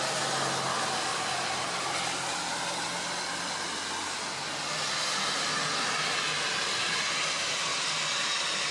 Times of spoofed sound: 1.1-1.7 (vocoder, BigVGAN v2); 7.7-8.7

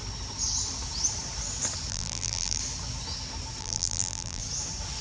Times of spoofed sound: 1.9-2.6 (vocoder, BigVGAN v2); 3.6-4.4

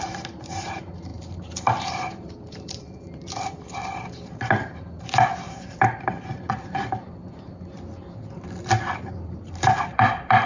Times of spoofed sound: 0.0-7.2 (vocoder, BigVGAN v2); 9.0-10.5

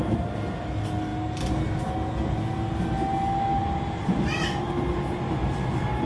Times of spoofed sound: none

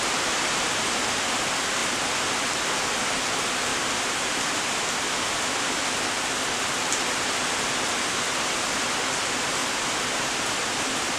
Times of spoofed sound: 1.8-3.2 (vocoder, BigVGAN v2); 3.7-5.7; 9.6-11.2

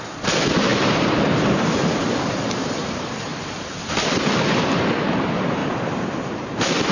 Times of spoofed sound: 0.7-4.8 (vocoder, BigVGAN v2); 5.6-6.9